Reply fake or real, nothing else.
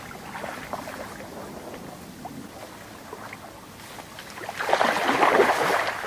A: real